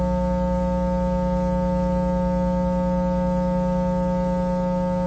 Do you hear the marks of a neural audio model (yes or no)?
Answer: no